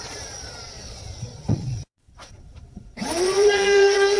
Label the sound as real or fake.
fake